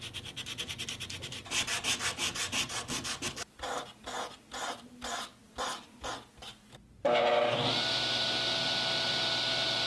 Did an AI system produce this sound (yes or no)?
no